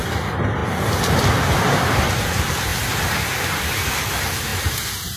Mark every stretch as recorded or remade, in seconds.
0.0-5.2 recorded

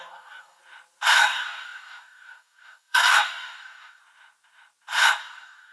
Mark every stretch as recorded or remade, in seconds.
0.0-0.6 remade; 0.6-1.2 recorded; 1.2-4.0 remade; 4.0-5.2 recorded; 5.2-5.7 remade